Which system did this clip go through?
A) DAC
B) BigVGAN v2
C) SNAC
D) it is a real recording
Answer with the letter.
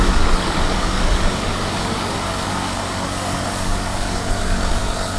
A